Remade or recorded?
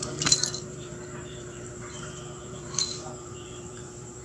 remade